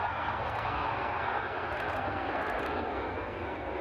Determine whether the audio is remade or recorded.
remade